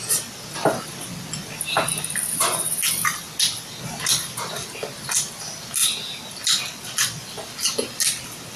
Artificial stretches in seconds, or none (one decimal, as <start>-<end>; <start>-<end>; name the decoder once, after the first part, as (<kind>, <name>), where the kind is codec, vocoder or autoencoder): none